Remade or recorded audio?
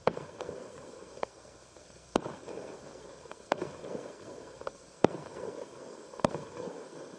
remade